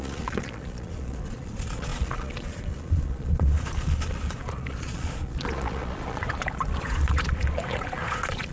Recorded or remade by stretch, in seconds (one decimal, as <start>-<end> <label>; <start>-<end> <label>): 0.0-8.5 remade